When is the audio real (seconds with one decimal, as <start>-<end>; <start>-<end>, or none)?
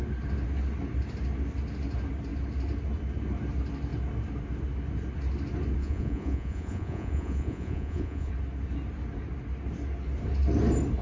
0.0-5.8; 8.3-11.0